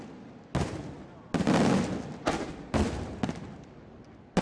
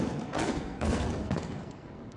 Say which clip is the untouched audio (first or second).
first